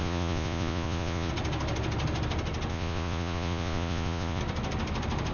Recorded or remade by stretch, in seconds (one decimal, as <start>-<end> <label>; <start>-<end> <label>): 0.0-1.3 remade; 1.3-2.7 recorded; 2.7-4.4 remade; 4.4-5.3 recorded